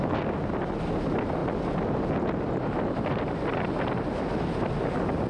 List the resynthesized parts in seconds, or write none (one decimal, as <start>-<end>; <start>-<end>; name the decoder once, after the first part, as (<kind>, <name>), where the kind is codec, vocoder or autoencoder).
none